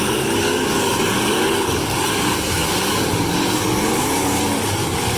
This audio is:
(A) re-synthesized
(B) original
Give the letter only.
A